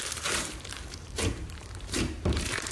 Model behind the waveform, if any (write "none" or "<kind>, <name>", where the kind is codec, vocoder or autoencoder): vocoder, BigVGAN v2